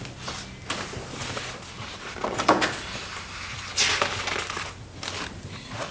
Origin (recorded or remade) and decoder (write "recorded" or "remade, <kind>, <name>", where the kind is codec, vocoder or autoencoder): recorded